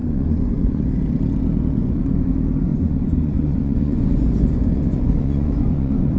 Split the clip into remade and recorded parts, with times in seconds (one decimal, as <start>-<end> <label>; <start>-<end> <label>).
0.0-0.8 remade; 0.8-1.8 recorded; 1.8-2.3 remade; 2.3-2.7 recorded; 2.7-6.2 remade